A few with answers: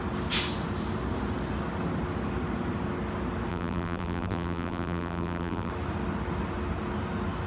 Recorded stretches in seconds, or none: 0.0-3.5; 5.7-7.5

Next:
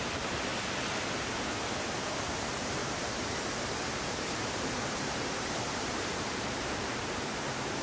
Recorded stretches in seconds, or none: 0.5-2.1

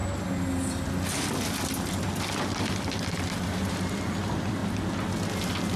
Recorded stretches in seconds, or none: 0.0-2.6; 4.6-5.8